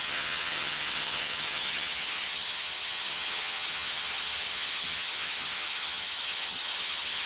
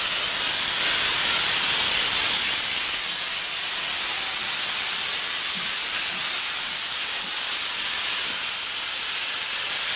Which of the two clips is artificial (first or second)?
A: first